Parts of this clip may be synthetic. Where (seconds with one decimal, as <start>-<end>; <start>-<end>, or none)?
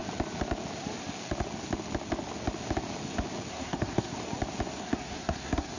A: 3.5-4.1; 4.8-5.8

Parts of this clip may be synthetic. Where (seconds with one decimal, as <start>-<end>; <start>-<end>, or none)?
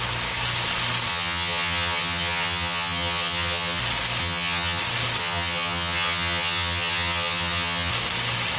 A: 1.1-3.8; 4.2-4.8; 5.2-7.9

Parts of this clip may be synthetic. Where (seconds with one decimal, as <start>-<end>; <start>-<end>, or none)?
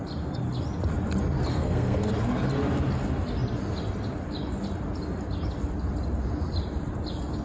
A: 1.5-2.1